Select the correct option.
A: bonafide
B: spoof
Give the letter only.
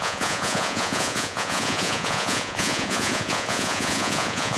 B